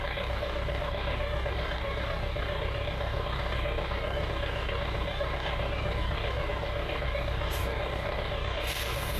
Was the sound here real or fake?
fake